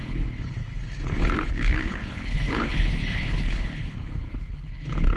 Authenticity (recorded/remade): remade